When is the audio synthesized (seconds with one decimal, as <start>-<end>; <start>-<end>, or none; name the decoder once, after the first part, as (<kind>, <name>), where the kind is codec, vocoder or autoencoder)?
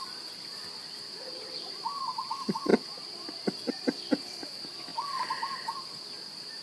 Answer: 0.0-0.6 (vocoder, BigVGAN v2); 1.3-6.6